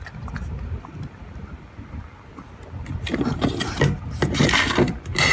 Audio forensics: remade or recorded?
recorded